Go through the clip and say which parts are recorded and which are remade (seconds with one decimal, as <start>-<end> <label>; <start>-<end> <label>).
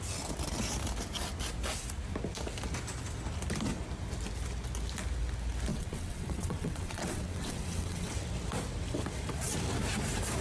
0.0-5.7 recorded; 5.7-8.1 remade; 8.1-10.4 recorded